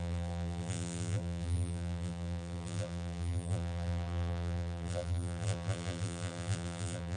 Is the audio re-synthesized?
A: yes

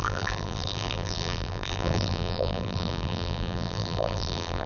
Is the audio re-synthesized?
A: yes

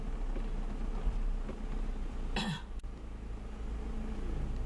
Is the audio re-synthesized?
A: no